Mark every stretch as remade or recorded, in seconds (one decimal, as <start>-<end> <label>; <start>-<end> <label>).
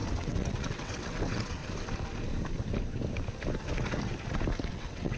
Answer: 0.0-1.6 remade; 1.6-4.7 recorded; 4.7-5.2 remade